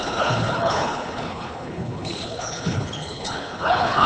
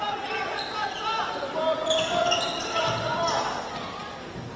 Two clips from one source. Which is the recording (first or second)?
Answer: second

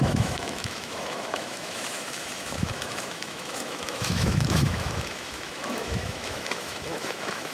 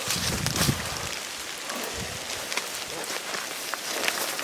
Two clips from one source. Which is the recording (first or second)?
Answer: second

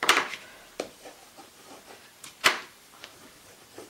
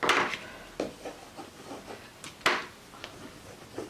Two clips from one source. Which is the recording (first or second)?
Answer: second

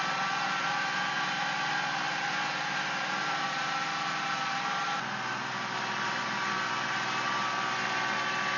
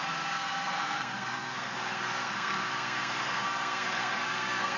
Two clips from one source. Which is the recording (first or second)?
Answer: first